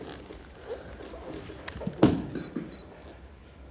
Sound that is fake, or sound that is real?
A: real